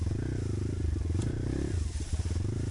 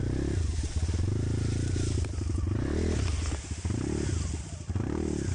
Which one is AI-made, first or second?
first